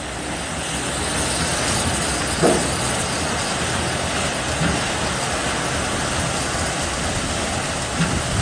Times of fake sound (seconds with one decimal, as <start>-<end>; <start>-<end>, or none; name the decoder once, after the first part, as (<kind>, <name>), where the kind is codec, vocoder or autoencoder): none